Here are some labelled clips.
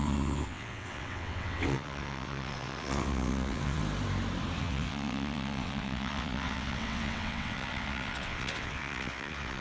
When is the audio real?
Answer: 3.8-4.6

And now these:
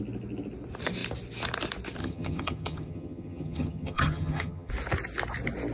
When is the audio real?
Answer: 0.0-2.0; 4.7-5.7

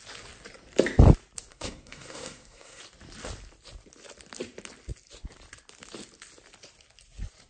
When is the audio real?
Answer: 0.0-1.5; 2.8-7.5

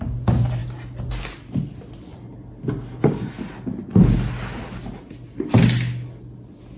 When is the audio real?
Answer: 0.0-6.8

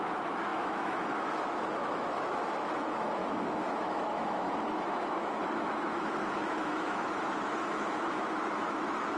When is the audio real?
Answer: none